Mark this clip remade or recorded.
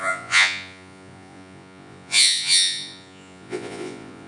remade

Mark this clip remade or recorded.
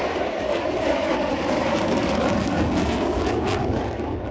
remade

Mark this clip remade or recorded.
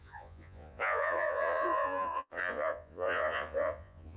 remade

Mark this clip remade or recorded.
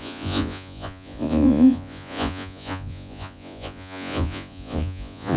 remade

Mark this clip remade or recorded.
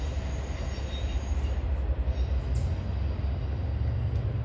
recorded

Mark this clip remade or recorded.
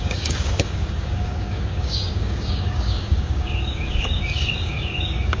remade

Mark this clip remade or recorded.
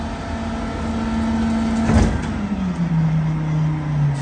recorded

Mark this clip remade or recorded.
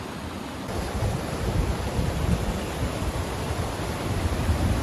remade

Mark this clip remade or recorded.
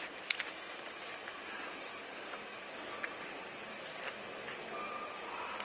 recorded